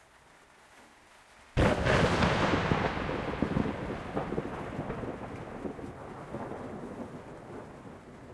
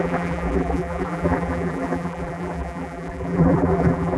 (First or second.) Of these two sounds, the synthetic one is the second